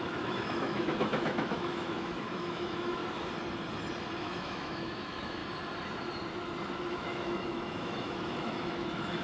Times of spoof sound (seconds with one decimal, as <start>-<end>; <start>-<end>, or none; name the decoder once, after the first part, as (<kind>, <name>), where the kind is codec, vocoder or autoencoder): 0.0-3.0 (autoencoder, DAC-VAE); 4.2-5.4; 6.9-9.2